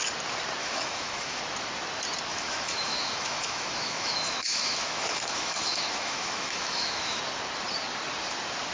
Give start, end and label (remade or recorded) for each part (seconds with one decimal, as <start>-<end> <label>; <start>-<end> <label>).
0.0-0.6 recorded; 0.6-1.4 remade; 1.4-2.3 recorded; 2.3-7.2 remade; 7.2-8.7 recorded